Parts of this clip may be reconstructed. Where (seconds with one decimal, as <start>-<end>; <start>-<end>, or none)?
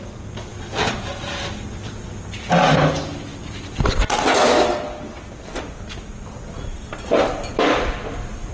none